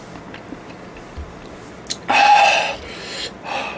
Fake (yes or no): no